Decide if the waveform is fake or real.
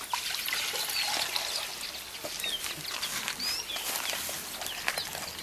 real